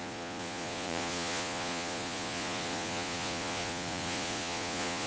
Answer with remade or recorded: remade